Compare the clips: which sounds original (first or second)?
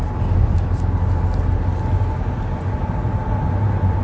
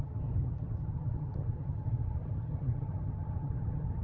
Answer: first